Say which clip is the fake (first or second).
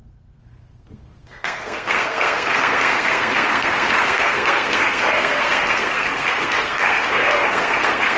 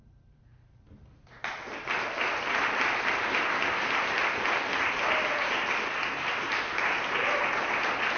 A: first